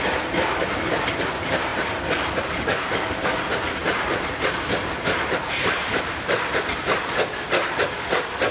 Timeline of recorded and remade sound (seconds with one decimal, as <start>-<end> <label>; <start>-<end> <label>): 0.0-3.8 recorded; 3.8-7.4 remade; 7.4-8.5 recorded